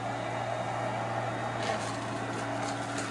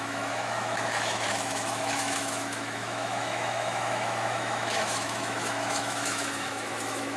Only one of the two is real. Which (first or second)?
first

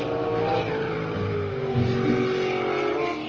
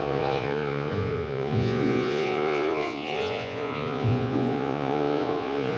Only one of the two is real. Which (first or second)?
first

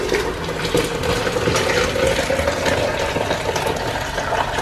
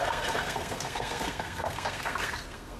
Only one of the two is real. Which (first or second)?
first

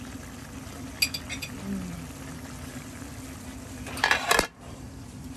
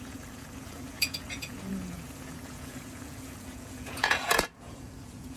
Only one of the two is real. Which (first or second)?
first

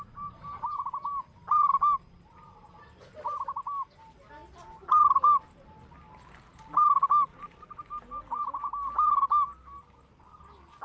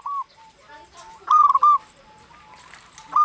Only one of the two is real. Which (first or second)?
first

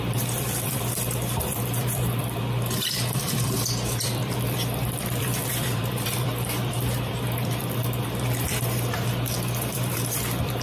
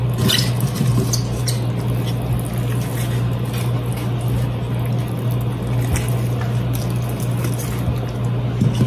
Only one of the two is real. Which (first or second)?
second